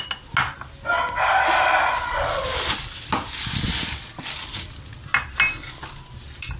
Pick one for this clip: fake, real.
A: real